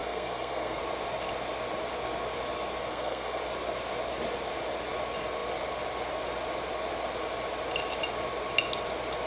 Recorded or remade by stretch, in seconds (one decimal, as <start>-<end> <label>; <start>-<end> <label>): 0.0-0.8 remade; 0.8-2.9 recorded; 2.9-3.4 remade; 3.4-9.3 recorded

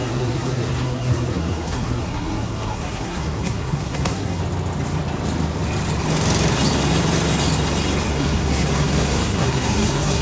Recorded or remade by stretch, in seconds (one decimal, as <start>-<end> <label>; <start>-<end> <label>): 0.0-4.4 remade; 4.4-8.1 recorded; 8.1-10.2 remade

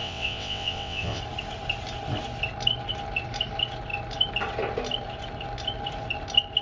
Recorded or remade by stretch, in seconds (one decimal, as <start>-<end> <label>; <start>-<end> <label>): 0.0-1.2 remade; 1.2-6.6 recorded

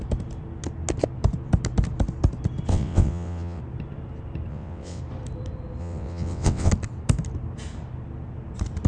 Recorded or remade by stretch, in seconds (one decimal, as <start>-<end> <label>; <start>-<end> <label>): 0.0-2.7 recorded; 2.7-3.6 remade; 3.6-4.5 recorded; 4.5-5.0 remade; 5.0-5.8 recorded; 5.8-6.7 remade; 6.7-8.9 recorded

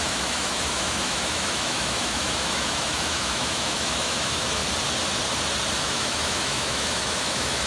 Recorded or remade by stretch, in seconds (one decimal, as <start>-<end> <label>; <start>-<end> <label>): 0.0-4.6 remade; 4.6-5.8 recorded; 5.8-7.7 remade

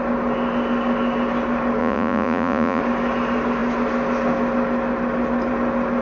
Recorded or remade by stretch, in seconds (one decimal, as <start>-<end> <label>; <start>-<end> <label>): 0.0-1.8 recorded; 1.8-2.8 remade; 2.8-6.0 recorded

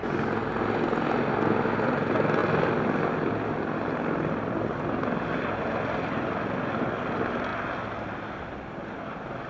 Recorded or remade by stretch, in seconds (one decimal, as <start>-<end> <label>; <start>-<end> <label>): 0.0-9.5 recorded